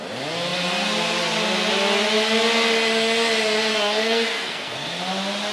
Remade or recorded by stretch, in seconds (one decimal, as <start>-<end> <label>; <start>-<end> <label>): 0.0-3.7 recorded; 3.7-5.0 remade; 5.0-5.5 recorded